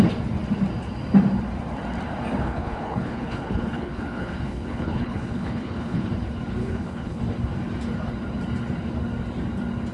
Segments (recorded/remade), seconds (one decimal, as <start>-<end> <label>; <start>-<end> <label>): 0.0-2.4 recorded; 2.4-6.1 remade; 6.1-6.6 recorded; 6.6-7.2 remade; 7.2-9.9 recorded